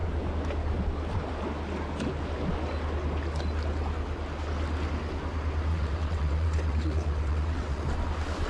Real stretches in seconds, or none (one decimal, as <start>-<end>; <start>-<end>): 0.0-5.7; 7.8-8.5